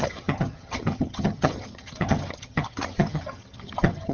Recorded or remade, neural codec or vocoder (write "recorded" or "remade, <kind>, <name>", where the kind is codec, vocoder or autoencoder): remade, vocoder, HiFi-GAN